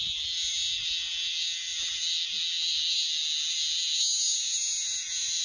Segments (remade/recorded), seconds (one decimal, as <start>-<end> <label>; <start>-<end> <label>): 0.0-5.4 recorded

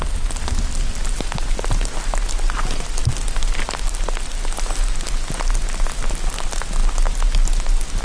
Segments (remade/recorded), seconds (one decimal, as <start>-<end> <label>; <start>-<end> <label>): 0.0-8.0 recorded